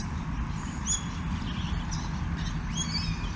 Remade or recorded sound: recorded